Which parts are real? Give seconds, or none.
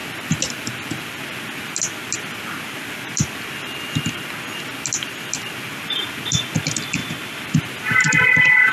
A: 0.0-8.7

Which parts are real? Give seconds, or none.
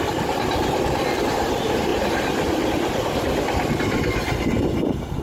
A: 0.0-5.2